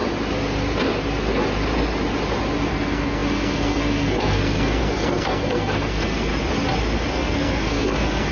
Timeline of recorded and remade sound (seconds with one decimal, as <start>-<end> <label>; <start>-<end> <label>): 0.0-2.7 recorded; 2.7-6.3 remade; 6.3-7.1 recorded; 7.1-8.3 remade